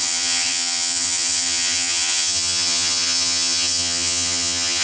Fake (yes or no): yes